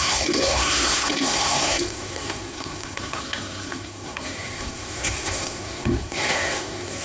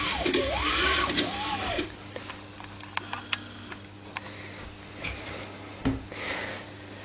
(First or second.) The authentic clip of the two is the second